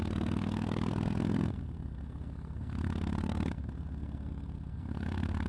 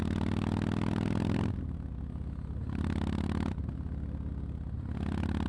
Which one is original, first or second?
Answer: second